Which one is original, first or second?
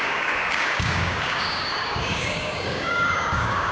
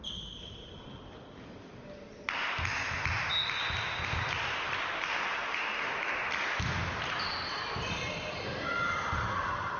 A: second